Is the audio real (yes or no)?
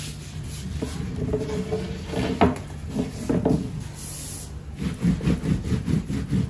yes